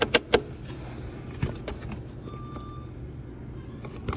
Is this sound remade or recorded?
recorded